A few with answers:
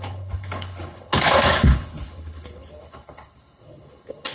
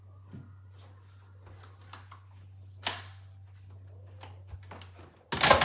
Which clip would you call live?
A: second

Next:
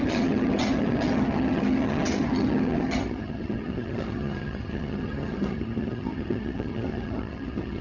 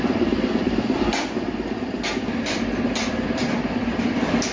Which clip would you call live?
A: second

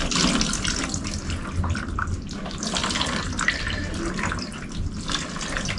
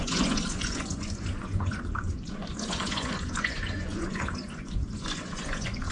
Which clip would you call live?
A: first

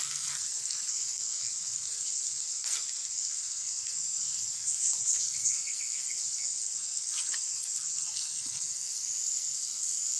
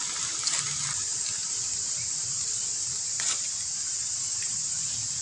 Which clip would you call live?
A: second